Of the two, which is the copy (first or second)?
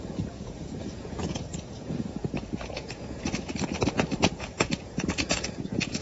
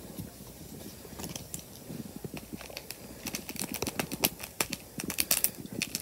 first